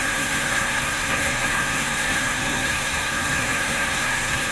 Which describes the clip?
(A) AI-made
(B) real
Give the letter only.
A